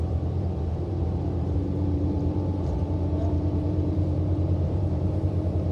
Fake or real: fake